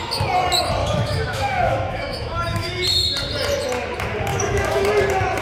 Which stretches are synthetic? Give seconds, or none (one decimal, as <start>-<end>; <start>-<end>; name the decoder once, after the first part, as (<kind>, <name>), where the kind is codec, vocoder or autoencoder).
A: 0.8-2.8 (autoencoder, DAC-VAE); 4.3-4.9